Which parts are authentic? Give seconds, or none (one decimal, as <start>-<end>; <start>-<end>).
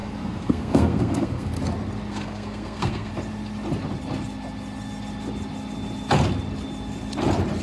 1.5-2.1; 3.1-7.6